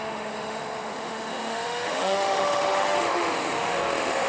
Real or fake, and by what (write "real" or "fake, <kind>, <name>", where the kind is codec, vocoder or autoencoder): fake, autoencoder, DAC-VAE